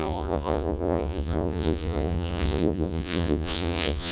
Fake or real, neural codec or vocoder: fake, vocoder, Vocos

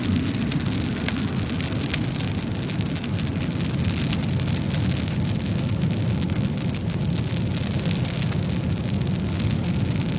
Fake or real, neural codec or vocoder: real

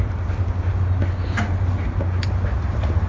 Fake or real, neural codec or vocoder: real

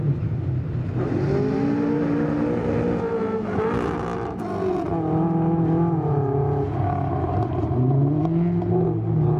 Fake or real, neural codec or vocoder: real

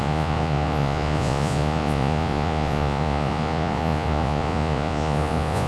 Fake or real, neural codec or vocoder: fake, vocoder, Vocos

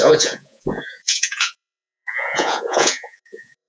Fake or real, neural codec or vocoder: fake, vocoder, Vocos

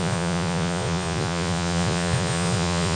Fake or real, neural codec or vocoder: fake, vocoder, Vocos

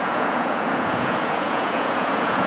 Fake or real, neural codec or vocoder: fake, vocoder, Vocos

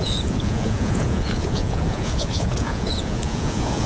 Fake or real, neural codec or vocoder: fake, vocoder, Vocos